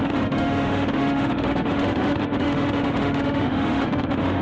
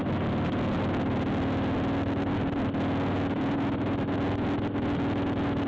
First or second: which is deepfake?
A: first